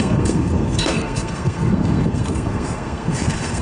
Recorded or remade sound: remade